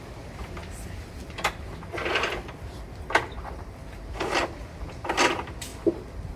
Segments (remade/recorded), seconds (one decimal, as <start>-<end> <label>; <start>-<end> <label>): 0.0-6.4 remade